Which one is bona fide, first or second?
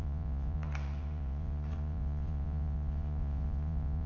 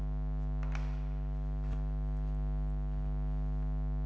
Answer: second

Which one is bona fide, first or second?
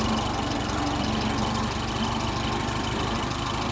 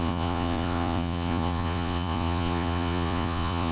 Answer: first